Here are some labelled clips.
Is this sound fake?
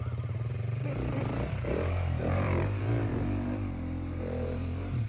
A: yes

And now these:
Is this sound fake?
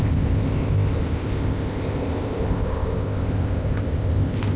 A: yes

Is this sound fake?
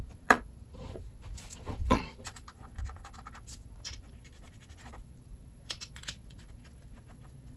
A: yes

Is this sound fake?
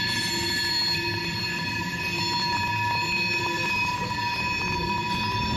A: no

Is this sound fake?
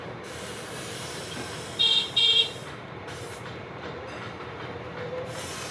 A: yes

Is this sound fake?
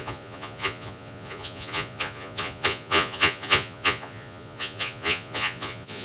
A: yes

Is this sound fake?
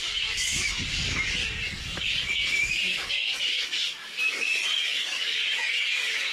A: yes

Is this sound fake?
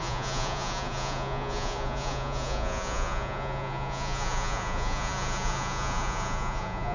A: yes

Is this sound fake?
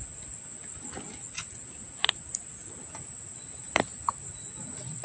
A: no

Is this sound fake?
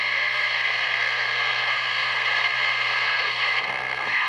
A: yes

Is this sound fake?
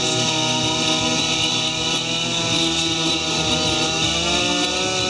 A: no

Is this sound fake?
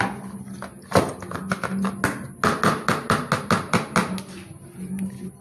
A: no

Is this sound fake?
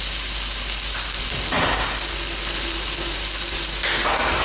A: no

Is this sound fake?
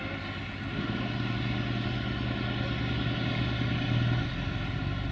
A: no